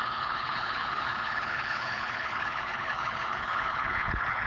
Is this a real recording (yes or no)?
no